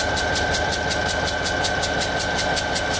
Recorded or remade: recorded